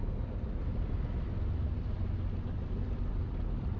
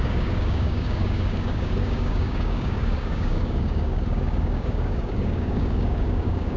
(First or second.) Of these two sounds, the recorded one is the first